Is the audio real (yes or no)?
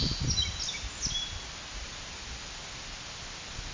yes